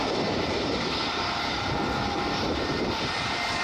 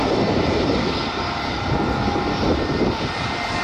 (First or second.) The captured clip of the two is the second